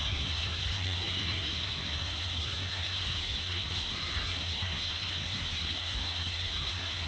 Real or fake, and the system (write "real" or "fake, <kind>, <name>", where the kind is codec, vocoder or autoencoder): fake, codec, SNAC